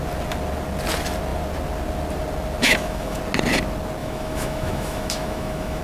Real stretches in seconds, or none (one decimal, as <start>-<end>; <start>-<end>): 0.0-2.6; 3.2-4.0